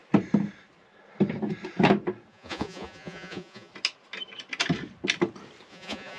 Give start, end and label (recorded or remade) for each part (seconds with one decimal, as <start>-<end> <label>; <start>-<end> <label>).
0.0-2.3 recorded; 2.3-3.7 remade; 3.7-5.7 recorded; 5.7-6.2 remade